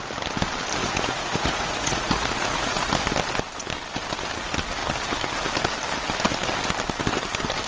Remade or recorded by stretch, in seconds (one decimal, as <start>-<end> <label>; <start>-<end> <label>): 0.0-0.8 recorded; 0.8-2.9 remade; 2.9-7.7 recorded